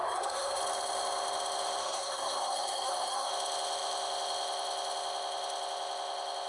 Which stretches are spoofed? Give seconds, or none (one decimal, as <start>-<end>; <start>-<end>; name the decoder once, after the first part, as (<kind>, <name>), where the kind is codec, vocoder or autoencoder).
0.0-0.6 (codec, SNAC); 1.8-3.3